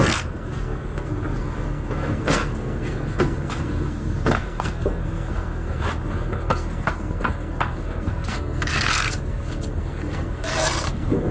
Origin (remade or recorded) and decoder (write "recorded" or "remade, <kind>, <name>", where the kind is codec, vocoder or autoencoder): remade, codec, SNAC